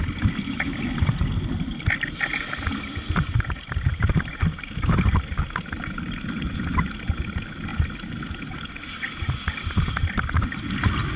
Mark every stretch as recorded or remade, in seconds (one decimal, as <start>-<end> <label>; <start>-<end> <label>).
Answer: 0.0-11.2 recorded